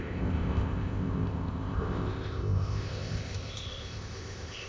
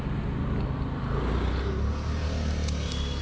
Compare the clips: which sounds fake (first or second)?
first